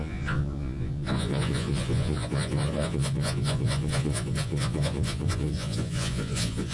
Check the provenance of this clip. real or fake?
fake